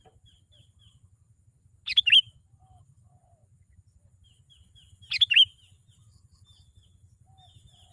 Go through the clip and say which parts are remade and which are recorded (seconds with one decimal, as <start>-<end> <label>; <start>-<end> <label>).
0.0-7.9 recorded